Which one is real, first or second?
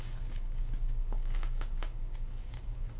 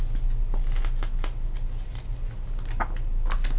second